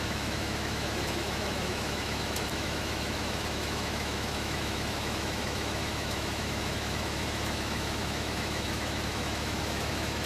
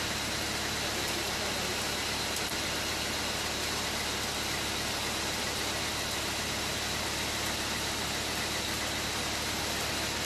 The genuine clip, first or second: second